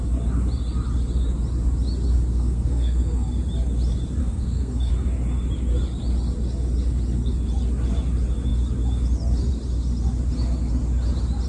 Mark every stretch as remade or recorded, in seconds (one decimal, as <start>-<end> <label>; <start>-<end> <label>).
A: 0.0-2.3 recorded; 2.3-3.3 remade; 3.3-4.2 recorded; 4.2-4.9 remade; 4.9-11.5 recorded